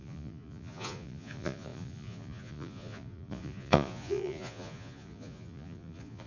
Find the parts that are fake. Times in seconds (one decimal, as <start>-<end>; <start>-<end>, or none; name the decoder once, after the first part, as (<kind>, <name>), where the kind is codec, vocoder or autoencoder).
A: 0.0-6.3 (vocoder, Vocos)